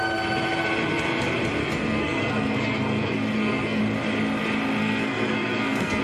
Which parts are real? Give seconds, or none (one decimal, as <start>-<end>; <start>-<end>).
0.0-1.6; 3.8-4.8